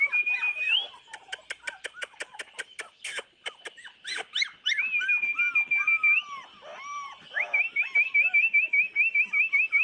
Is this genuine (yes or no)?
yes